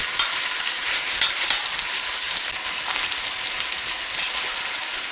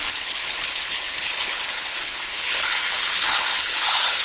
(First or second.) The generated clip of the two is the second